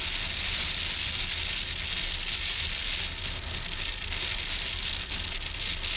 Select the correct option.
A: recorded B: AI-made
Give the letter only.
A